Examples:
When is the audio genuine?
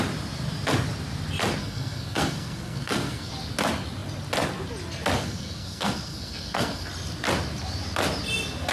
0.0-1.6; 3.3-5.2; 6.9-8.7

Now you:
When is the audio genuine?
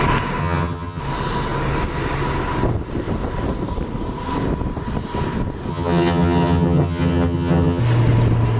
0.0-0.4; 1.0-5.7; 7.8-8.6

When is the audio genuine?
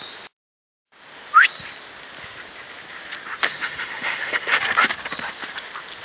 0.0-3.4; 4.6-6.0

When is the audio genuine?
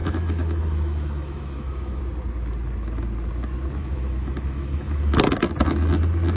2.0-3.8; 5.1-6.4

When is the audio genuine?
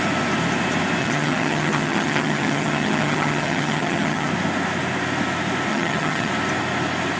0.0-1.0; 4.3-5.7; 6.3-7.2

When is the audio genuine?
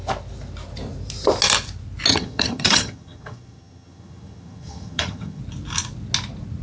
0.0-2.1; 5.4-6.6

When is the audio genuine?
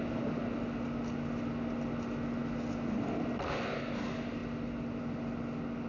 0.0-5.9